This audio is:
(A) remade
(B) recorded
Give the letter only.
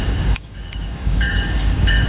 A